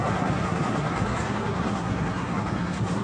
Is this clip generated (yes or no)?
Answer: yes